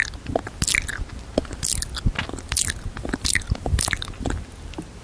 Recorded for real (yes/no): yes